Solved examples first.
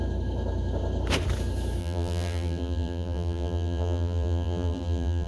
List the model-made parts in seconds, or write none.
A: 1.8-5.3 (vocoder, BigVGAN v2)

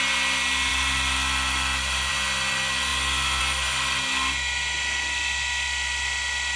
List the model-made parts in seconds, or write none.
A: 0.7-2.1 (vocoder, BigVGAN v2)